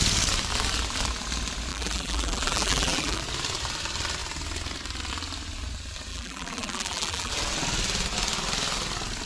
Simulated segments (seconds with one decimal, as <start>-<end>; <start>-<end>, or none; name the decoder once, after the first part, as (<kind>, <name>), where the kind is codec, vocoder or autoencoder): 1.7-3.2 (vocoder, BigVGAN v2); 6.1-7.3